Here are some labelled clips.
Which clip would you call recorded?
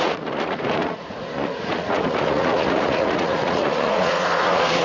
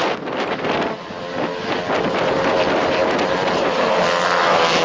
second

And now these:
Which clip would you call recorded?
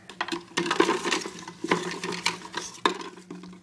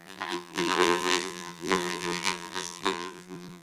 first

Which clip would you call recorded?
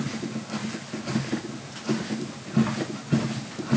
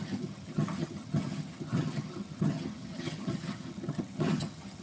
first